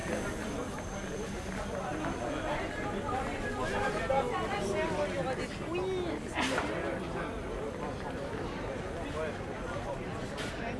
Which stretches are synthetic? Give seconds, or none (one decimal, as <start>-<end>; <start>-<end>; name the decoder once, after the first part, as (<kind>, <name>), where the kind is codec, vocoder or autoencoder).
0.0-1.4 (vocoder, BigVGAN v2)